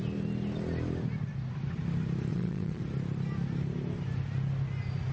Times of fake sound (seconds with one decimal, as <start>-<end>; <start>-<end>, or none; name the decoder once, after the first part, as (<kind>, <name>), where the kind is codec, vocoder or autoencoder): 2.3-2.8 (vocoder, Vocos)